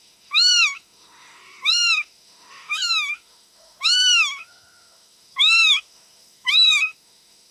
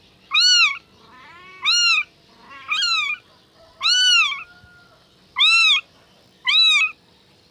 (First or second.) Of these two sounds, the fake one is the first